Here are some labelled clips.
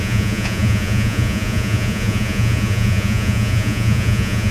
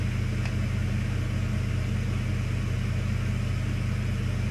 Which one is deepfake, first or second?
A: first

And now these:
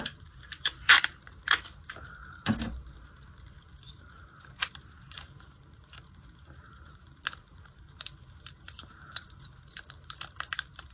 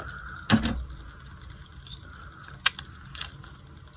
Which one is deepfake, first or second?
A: first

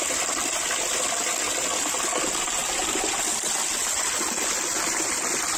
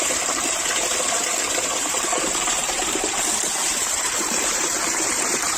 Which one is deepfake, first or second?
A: second